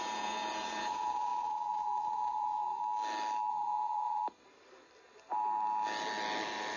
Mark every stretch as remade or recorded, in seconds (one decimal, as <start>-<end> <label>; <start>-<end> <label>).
0.0-2.8 remade; 2.8-3.5 recorded; 3.5-4.2 remade; 4.2-6.8 recorded